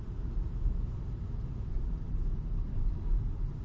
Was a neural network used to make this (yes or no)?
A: yes